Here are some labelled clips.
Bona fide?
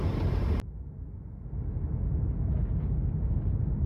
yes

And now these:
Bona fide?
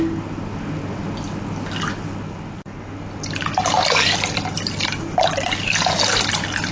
yes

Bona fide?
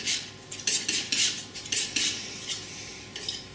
yes